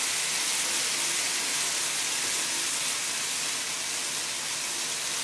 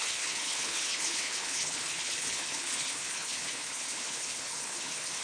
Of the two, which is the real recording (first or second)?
first